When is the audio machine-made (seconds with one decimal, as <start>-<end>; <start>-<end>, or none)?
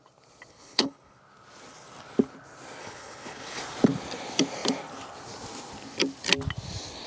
0.5-1.2; 2.8-3.6